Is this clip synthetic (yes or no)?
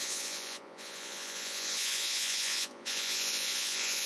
yes